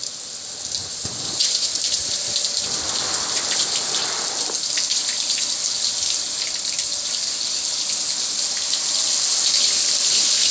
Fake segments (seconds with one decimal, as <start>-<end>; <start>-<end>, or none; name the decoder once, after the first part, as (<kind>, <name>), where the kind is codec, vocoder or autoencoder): 0.8-1.8 (vocoder, Vocos)